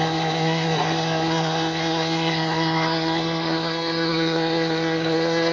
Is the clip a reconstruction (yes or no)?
yes